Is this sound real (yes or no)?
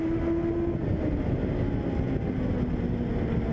yes